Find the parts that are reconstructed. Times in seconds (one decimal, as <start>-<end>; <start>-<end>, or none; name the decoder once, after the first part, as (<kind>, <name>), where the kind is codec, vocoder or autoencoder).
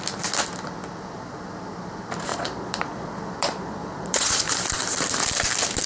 2.3-4.4 (vocoder, Vocos)